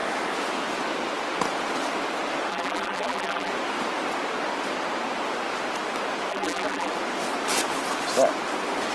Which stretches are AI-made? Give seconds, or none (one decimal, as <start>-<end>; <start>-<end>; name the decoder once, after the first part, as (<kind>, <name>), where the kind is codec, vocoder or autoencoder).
2.5-3.5 (vocoder, BigVGAN v2); 6.3-6.9